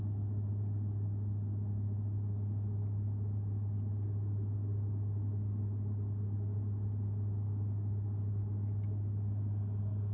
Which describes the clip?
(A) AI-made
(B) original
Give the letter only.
B